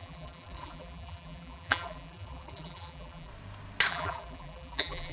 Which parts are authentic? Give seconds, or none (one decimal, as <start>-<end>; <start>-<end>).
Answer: 3.3-3.9